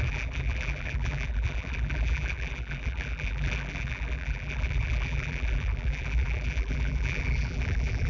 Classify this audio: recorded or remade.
remade